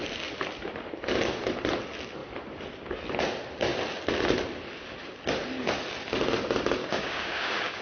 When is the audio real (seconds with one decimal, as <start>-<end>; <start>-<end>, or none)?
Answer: 0.0-6.8